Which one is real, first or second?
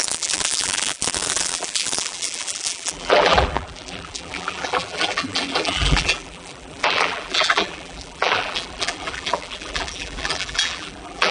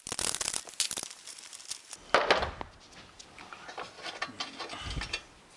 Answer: second